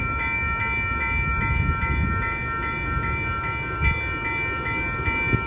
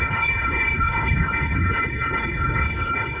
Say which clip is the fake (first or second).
second